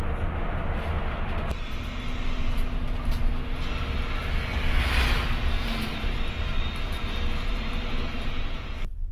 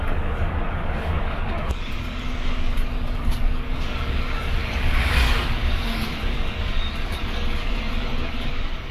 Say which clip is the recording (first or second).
first